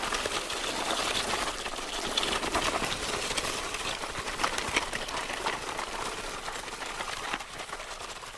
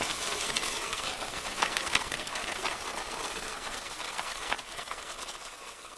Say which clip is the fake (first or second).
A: second